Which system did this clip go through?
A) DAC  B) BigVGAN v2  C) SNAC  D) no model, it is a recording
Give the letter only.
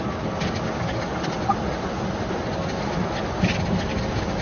D